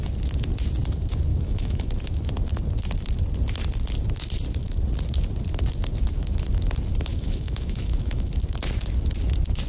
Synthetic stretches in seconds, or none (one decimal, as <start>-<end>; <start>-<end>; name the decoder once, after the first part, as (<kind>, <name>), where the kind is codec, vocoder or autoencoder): 1.3-1.9 (autoencoder, DAC-VAE); 7.1-8.3